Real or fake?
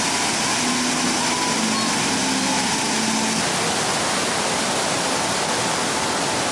real